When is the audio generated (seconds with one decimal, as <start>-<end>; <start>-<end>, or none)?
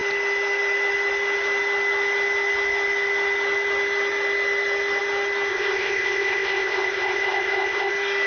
5.5-7.9